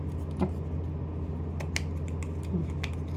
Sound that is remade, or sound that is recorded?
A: recorded